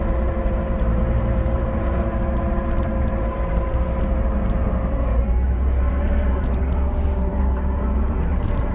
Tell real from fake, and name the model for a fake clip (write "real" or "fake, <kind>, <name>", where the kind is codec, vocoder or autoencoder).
fake, vocoder, BigVGAN v2